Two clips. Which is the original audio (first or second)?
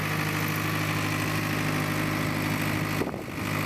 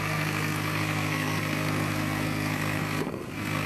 first